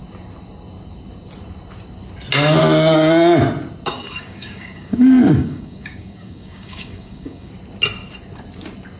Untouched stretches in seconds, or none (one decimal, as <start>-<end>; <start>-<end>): 0.0-3.9; 7.5-9.0